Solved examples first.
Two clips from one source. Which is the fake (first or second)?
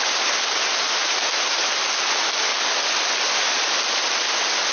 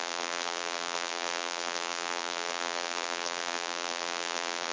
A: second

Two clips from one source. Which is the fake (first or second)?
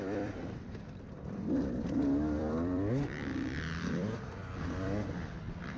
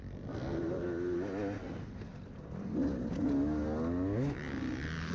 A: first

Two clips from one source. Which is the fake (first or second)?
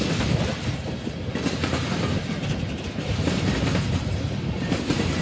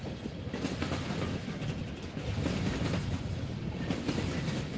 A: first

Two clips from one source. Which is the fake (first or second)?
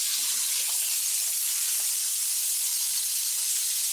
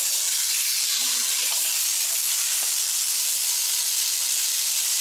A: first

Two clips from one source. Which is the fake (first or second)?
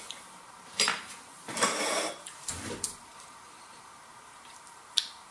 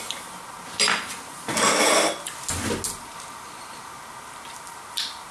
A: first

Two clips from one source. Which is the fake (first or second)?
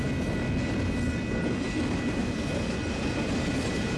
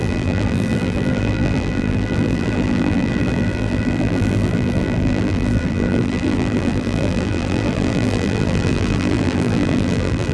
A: second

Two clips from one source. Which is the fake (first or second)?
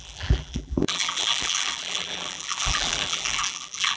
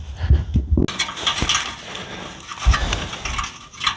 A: first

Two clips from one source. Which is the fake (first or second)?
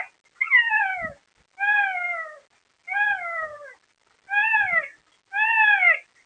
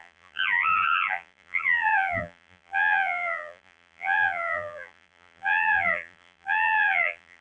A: second